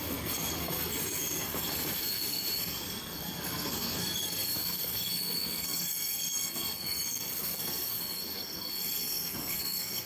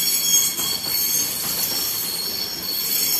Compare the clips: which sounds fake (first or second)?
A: first